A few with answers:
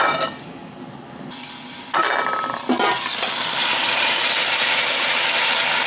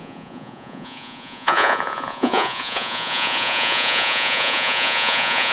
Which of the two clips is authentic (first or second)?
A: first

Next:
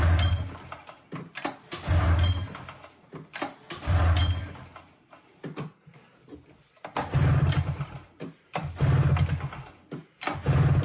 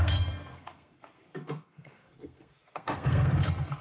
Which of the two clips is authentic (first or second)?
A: first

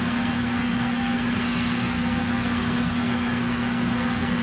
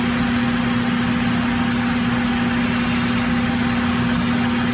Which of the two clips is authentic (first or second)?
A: second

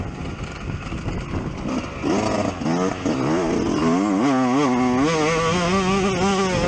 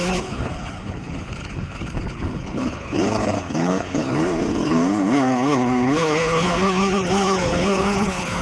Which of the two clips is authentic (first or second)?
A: first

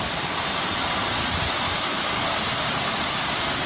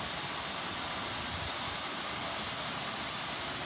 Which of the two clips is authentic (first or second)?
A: second